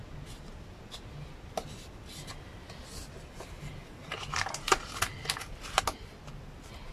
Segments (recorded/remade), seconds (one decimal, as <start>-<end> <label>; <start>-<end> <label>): 0.0-6.9 recorded